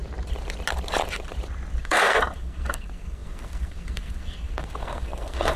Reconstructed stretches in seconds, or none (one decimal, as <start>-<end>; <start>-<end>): 1.8-5.6